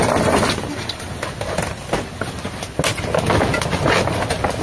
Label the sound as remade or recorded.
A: recorded